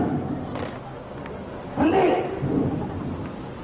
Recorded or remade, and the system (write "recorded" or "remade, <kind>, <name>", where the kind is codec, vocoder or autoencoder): recorded